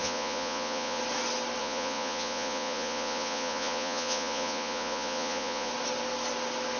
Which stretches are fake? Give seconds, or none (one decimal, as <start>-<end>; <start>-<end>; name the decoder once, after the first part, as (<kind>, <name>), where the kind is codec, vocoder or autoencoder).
0.0-1.0 (vocoder, Vocos); 1.6-5.7